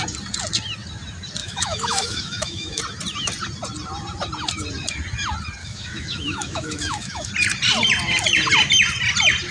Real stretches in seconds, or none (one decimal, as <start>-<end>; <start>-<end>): 0.0-1.4; 2.8-5.6; 7.3-9.5